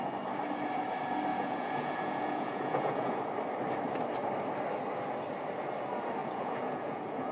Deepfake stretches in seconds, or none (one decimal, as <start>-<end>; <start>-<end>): 1.3-3.2; 6.2-7.3